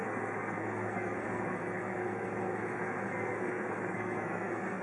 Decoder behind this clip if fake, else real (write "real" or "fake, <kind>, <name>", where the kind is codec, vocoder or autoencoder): fake, codec, SNAC